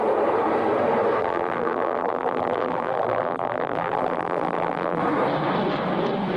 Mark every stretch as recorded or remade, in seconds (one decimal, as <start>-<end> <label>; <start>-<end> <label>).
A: 0.0-1.2 recorded; 1.2-5.0 remade; 5.0-6.4 recorded